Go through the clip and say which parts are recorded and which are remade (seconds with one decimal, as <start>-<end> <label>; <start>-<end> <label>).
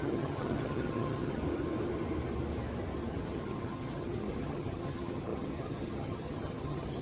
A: 0.0-1.4 remade; 1.4-3.1 recorded; 3.1-7.0 remade